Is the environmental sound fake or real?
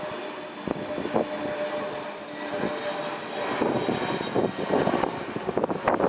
real